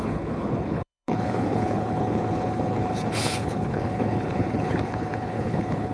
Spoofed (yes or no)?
yes